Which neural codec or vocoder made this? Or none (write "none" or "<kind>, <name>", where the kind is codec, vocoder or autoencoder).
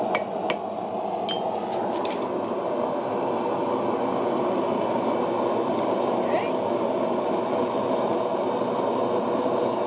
none